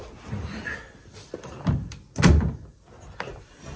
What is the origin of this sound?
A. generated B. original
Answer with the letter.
B